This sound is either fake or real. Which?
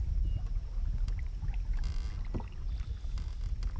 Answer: real